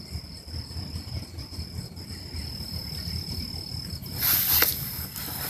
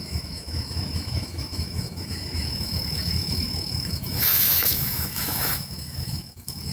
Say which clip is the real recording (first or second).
first